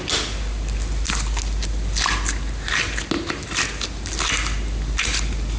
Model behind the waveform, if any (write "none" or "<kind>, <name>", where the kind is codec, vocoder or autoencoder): none